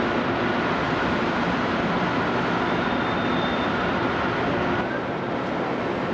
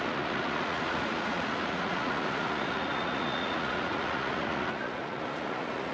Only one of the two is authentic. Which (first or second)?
first